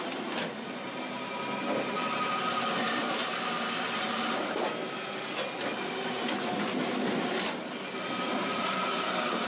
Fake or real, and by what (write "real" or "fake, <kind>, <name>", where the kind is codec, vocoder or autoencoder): real